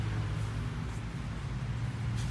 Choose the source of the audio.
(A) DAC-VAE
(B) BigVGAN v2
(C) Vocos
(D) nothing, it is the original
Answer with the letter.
D